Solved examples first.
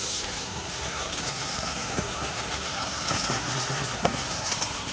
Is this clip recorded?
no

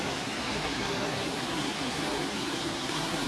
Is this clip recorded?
no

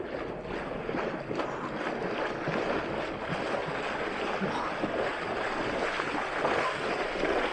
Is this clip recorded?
yes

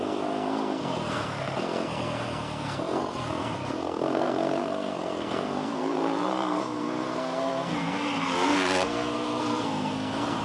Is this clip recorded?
no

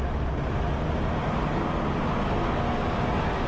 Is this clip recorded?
yes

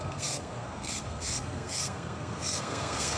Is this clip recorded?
no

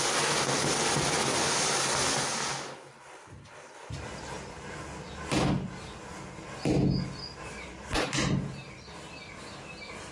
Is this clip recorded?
yes